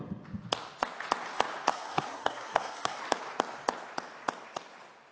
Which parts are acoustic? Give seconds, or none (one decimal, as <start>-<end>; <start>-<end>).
0.0-1.7; 3.0-5.1